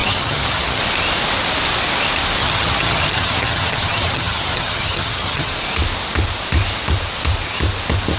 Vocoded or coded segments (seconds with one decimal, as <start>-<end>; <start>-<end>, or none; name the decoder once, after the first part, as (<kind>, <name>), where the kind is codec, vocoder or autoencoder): 0.0-0.8 (vocoder, HiFi-GAN); 2.4-5.5